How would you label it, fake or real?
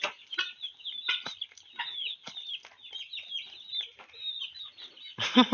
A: real